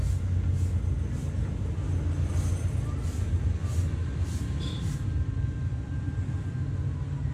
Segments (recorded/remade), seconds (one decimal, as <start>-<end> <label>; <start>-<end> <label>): 0.0-3.6 recorded; 3.6-6.4 remade; 6.4-7.3 recorded